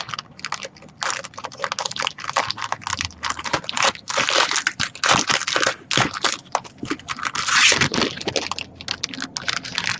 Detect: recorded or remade recorded